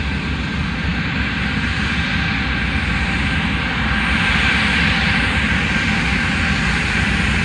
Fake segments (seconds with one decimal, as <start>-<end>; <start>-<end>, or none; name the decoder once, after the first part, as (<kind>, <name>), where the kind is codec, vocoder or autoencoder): none